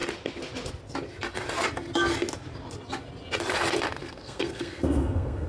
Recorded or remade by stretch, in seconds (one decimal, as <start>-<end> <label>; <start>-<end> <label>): 0.0-4.0 recorded; 4.0-5.5 remade